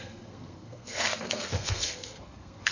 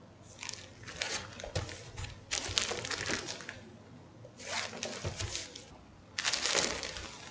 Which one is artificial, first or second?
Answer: first